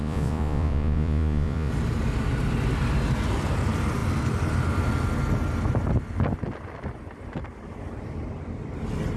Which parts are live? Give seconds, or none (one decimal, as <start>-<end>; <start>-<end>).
1.7-9.2